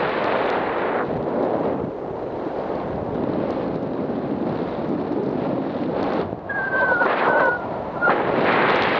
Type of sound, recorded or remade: recorded